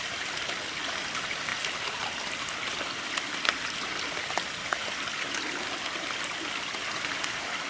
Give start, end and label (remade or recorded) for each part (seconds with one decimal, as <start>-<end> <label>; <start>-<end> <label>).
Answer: 0.0-7.7 recorded